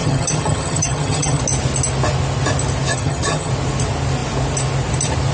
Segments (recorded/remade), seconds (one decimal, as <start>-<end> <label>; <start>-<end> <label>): 0.0-1.4 remade; 1.4-2.9 recorded; 2.9-3.5 remade; 3.5-5.3 recorded